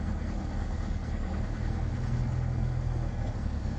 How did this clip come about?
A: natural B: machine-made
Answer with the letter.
B